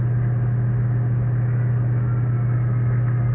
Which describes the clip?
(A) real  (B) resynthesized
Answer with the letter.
A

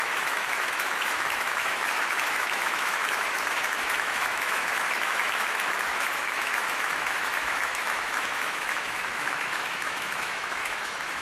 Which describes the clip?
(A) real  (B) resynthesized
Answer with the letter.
B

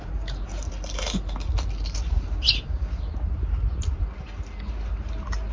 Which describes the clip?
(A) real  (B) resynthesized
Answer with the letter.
A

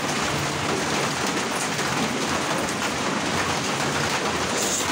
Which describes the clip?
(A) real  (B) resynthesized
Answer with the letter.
A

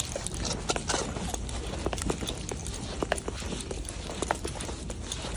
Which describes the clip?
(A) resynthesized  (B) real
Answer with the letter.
B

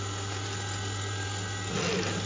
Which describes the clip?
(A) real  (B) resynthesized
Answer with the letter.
A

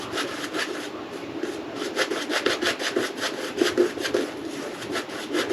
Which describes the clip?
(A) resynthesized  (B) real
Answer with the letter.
B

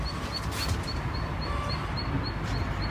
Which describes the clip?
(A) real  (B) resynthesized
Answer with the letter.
A